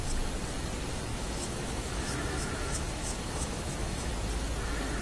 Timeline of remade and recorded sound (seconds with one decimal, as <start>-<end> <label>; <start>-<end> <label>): 0.0-1.1 recorded; 1.1-4.1 remade; 4.1-5.0 recorded